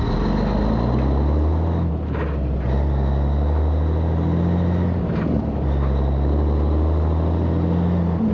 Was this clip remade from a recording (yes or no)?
no